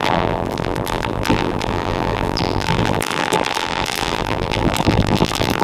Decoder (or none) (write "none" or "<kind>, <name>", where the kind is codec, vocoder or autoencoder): vocoder, BigVGAN v2